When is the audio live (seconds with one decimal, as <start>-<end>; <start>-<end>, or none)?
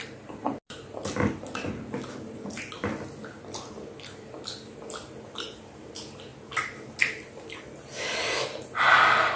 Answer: 0.0-9.4